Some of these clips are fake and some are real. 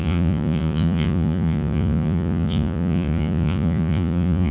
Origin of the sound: fake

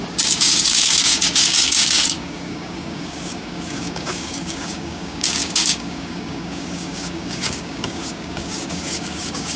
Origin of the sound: fake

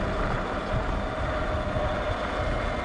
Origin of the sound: real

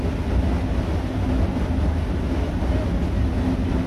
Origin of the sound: real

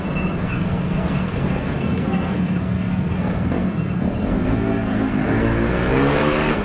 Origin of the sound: fake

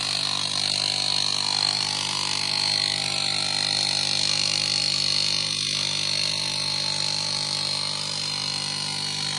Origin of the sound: real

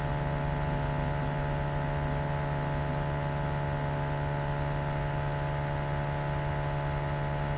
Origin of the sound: real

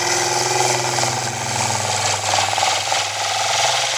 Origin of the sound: real